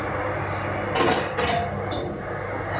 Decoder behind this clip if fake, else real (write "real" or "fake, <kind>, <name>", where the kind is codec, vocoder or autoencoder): real